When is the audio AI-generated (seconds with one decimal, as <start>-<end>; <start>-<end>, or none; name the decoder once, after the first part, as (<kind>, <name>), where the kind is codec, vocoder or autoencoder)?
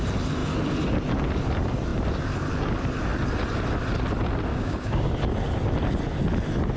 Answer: 4.5-5.1 (codec, DAC)